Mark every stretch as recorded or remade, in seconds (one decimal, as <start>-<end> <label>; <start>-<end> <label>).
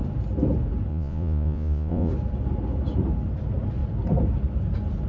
0.0-0.9 recorded; 0.9-2.1 remade; 2.1-5.1 recorded